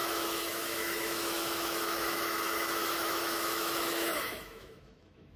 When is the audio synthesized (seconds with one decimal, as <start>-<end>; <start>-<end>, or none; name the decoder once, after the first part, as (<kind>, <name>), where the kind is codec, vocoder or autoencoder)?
0.0-5.4 (autoencoder, DAC-VAE)